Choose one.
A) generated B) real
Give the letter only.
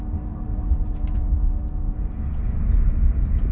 B